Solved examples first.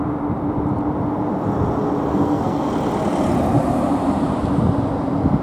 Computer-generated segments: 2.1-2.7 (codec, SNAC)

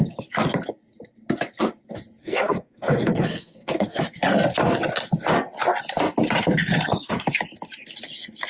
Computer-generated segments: 2.2-4.0 (codec, SNAC)

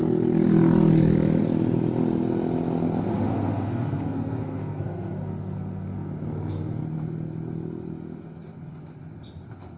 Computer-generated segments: 3.1-6.8 (codec, SNAC)

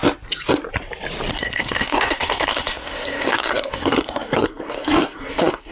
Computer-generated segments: 1.3-5.7 (codec, SNAC)

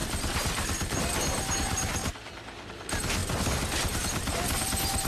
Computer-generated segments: none

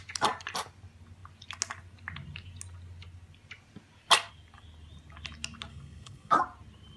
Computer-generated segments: 5.7-6.3 (codec, SNAC)

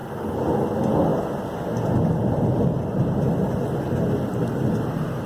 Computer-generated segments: none

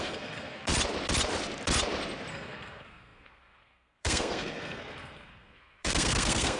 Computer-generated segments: 0.0-0.7 (codec, SNAC); 2.3-6.6